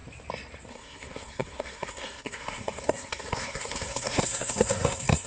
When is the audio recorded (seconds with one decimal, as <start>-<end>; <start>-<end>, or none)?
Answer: 0.0-0.7